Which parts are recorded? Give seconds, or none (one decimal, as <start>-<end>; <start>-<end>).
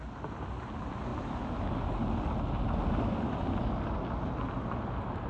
0.0-5.3